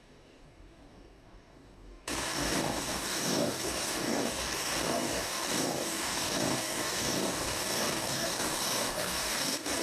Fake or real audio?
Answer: fake